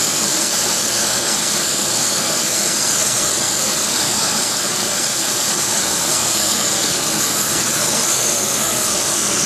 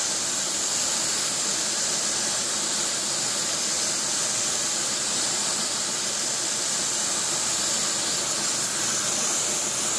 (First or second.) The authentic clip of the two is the second